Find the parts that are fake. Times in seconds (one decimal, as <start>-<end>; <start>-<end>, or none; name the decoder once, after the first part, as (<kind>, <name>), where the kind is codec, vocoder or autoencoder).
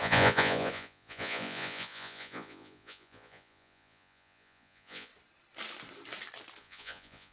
0.0-5.1 (vocoder, Vocos); 6.6-7.3